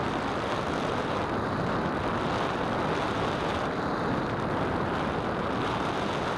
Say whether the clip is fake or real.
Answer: real